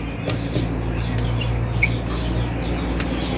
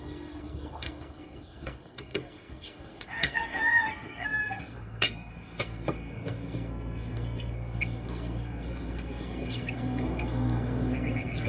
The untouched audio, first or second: first